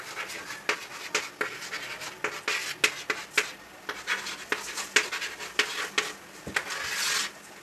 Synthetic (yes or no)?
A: no